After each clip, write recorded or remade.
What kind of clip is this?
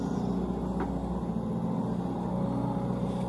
recorded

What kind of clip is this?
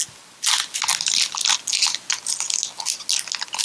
recorded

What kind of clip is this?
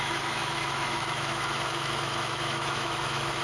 remade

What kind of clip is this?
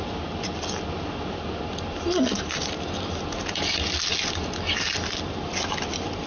recorded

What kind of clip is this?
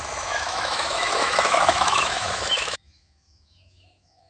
remade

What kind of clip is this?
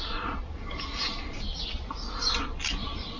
recorded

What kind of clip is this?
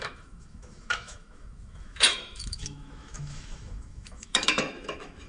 remade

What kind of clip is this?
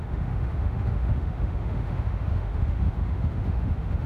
remade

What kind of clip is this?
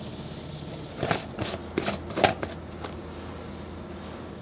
recorded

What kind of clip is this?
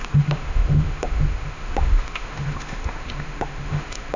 remade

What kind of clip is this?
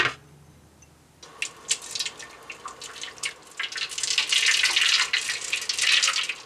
recorded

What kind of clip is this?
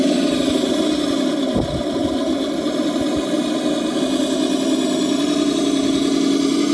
recorded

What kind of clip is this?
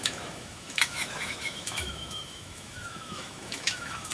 remade